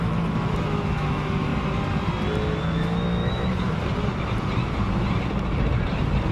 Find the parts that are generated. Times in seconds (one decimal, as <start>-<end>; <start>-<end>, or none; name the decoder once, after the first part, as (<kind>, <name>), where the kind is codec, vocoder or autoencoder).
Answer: 0.0-1.5 (autoencoder, DAC-VAE); 2.6-3.8